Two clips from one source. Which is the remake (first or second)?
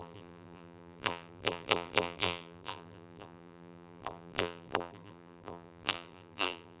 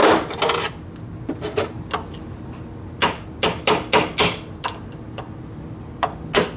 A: first